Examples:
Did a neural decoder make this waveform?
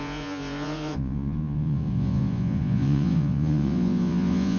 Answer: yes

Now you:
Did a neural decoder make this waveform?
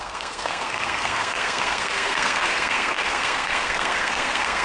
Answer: yes